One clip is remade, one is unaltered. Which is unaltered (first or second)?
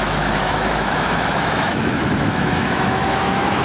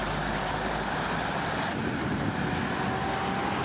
second